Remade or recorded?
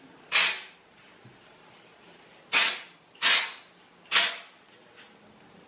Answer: recorded